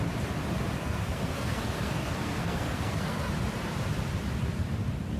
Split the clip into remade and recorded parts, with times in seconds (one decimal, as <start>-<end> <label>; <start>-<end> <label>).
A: 0.0-0.8 recorded; 0.8-3.3 remade; 3.3-5.2 recorded